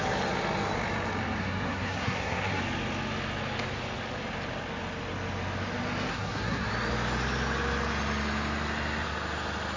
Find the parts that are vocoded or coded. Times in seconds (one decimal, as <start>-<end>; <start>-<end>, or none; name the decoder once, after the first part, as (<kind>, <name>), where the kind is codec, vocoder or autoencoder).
1.4-2.6 (codec, SNAC); 6.1-6.7